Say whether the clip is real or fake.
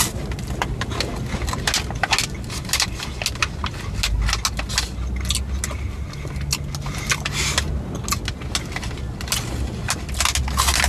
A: real